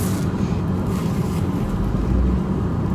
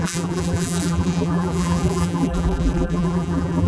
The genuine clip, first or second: first